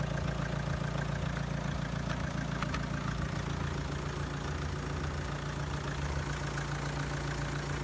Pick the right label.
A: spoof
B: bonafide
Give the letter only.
B